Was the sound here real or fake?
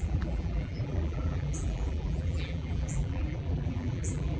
fake